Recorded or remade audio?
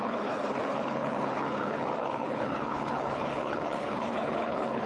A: remade